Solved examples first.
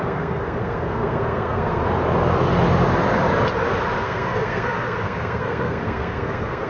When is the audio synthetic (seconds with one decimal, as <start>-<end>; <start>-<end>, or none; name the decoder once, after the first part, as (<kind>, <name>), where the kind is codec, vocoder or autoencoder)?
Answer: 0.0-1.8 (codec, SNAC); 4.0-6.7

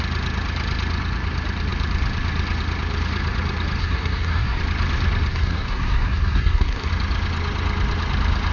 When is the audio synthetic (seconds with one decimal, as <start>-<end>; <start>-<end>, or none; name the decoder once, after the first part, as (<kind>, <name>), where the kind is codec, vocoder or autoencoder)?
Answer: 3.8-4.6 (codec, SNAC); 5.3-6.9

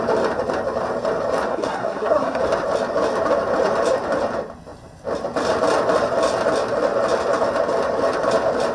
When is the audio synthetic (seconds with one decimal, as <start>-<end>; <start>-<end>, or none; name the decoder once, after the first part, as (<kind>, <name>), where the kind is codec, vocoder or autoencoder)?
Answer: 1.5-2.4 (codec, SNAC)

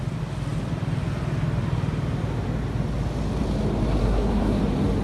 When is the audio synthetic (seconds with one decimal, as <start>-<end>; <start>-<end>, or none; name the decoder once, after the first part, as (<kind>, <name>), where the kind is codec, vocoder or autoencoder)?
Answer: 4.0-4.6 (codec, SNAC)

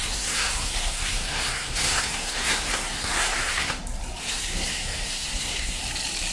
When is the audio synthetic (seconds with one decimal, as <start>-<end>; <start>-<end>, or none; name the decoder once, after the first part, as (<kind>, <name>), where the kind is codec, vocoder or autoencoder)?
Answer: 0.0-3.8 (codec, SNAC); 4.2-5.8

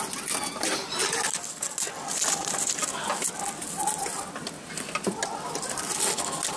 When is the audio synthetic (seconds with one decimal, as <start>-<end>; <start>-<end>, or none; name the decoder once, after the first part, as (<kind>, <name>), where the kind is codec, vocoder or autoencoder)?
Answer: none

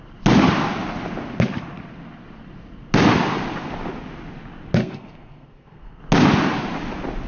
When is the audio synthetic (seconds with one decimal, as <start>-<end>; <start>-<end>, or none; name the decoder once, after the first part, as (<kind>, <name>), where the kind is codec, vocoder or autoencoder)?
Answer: 4.8-6.0 (codec, SNAC)